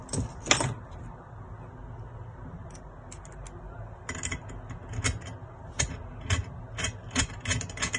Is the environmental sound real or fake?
real